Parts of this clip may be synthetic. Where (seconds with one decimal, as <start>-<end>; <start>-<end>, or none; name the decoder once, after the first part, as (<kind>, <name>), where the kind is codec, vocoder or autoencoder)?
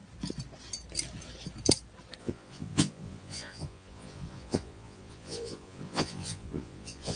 2.2-7.2 (vocoder, Vocos)